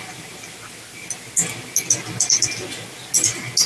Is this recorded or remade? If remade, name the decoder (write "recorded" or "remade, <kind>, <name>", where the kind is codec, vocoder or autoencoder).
recorded